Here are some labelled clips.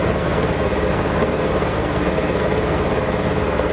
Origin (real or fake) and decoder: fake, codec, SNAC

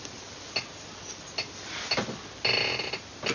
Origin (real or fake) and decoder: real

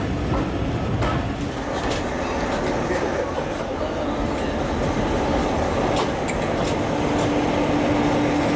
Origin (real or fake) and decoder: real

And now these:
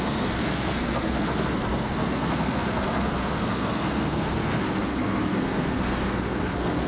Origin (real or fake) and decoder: fake, codec, SNAC